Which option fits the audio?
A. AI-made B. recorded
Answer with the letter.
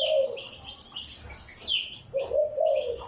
B